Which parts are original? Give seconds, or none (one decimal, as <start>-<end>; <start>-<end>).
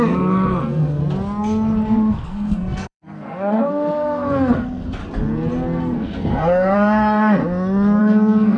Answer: 1.0-2.1; 5.0-5.8; 7.4-8.0